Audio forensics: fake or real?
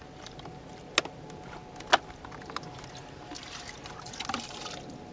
real